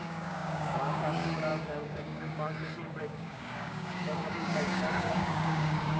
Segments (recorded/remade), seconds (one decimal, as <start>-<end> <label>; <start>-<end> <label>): 0.0-6.0 remade